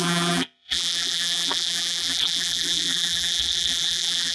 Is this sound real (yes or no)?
no